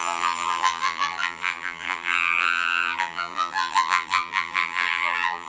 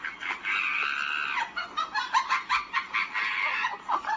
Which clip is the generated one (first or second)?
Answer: first